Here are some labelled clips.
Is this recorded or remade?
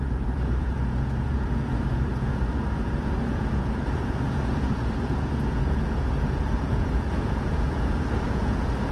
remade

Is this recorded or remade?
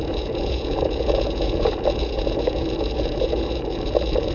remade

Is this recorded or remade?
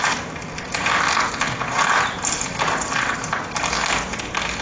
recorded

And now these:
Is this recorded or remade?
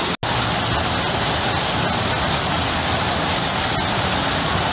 recorded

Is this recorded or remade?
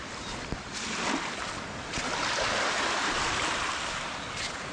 recorded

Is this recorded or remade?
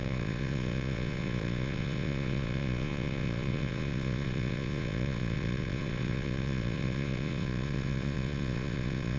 remade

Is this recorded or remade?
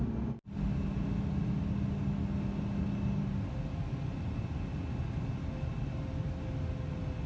recorded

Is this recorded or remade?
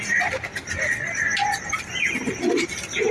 recorded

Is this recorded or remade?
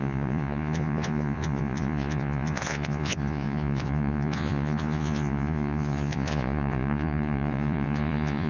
remade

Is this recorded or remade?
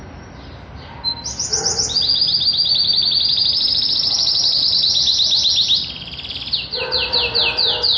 recorded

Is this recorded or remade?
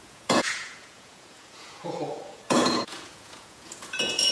remade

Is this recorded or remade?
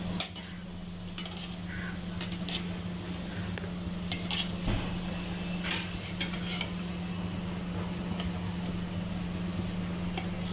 recorded